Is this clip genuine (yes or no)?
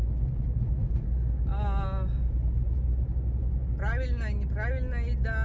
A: yes